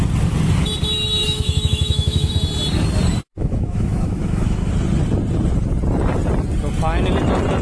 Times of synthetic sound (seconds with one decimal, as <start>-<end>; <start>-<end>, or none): 1.2-2.3; 3.3-4.7